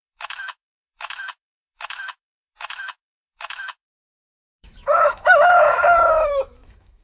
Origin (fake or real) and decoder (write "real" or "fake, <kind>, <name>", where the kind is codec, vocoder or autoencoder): fake, autoencoder, DAC-VAE